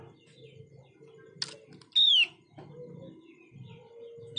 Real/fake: real